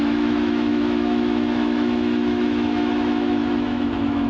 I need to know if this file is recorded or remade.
remade